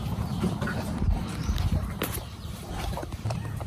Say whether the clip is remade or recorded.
remade